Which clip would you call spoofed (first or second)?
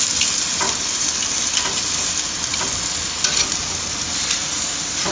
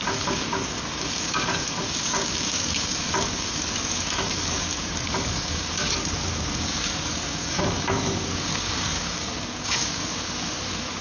second